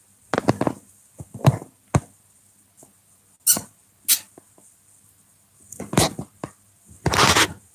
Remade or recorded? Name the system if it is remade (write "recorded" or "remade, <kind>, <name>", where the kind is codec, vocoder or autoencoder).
recorded